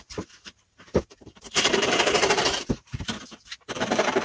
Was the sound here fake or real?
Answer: fake